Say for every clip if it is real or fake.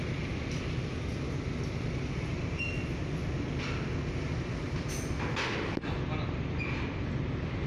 real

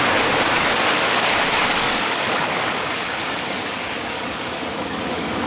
fake